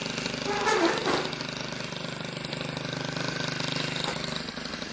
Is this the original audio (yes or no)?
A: yes